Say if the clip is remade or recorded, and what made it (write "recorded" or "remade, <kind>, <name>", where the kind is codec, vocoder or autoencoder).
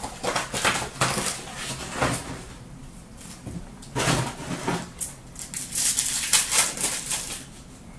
recorded